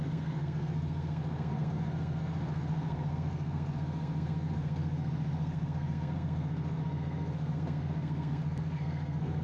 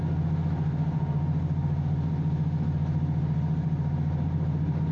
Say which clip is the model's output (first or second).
first